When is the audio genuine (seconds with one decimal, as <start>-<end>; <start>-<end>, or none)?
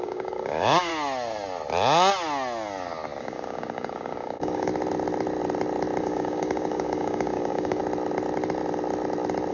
0.9-3.2; 4.7-6.0; 7.8-9.5